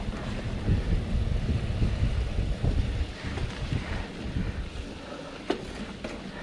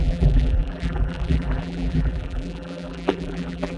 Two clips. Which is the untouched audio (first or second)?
first